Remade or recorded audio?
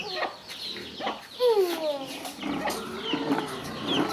recorded